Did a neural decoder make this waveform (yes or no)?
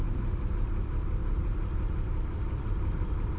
yes